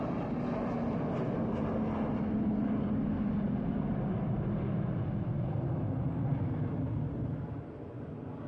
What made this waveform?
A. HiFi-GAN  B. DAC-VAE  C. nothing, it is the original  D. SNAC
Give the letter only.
C